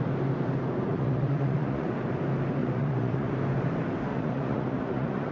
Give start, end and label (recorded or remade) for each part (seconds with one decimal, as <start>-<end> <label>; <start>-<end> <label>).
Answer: 0.0-0.9 recorded; 0.9-1.9 remade; 1.9-2.6 recorded; 2.6-3.3 remade; 3.3-4.1 recorded; 4.1-5.3 remade